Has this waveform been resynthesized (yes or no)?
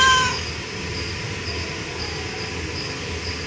no